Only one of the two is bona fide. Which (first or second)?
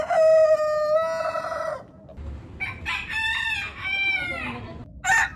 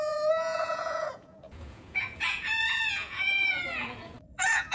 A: first